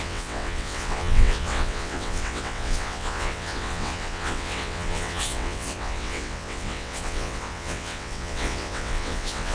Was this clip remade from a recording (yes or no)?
yes